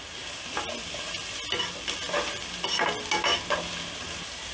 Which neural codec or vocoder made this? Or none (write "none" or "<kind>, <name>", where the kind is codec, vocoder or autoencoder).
none